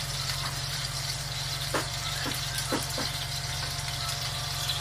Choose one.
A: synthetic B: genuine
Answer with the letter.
A